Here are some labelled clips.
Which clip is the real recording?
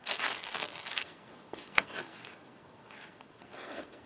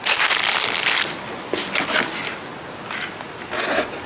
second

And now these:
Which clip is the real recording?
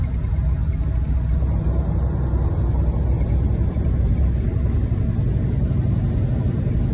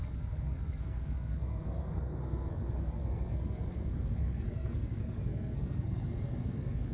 first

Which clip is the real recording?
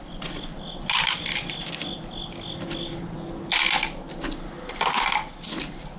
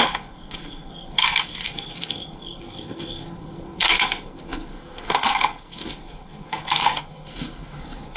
first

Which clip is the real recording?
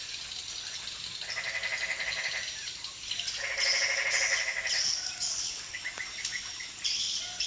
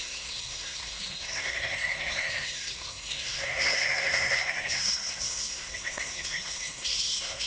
first